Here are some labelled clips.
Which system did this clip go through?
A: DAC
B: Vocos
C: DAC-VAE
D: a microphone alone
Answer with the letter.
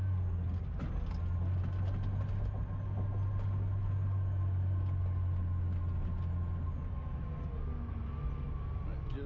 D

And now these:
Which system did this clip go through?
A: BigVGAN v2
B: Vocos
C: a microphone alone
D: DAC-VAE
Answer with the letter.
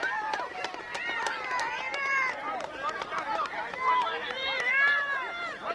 A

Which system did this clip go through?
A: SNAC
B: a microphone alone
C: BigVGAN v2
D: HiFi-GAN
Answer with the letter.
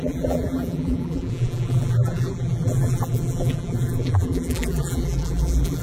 C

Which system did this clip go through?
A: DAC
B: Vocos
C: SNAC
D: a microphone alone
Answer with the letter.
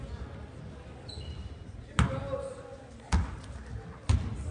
D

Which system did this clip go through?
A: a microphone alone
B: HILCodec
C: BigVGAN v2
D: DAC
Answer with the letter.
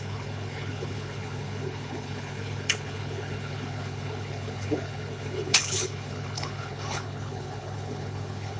B